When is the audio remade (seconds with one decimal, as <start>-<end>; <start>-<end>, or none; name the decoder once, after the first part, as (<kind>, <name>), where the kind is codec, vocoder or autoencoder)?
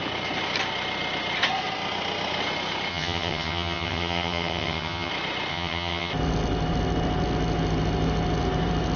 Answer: 2.9-5.1 (vocoder, HiFi-GAN); 5.5-6.1